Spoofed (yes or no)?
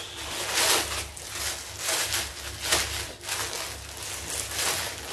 no